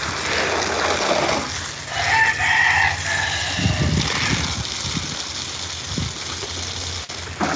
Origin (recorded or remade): recorded